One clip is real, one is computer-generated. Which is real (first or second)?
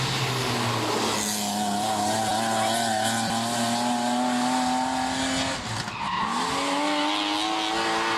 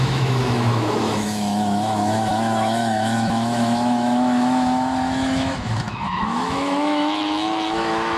first